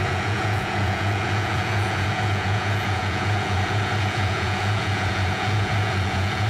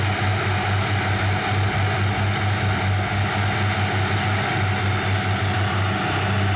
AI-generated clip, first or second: first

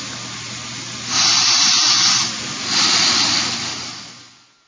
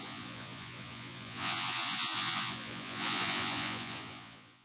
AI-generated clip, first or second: second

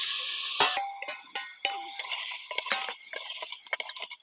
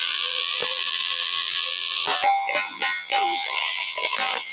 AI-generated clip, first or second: second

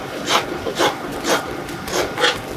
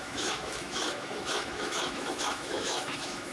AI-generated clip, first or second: second